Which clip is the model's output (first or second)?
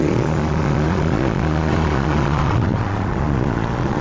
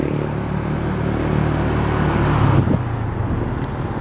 first